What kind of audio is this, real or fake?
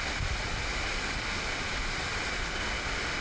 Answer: real